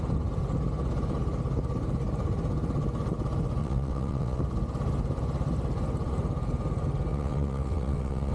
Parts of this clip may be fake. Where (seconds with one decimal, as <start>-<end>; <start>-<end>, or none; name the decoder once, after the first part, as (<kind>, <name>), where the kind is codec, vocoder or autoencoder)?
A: 3.6-4.4 (vocoder, WaveNeXt); 7.1-8.3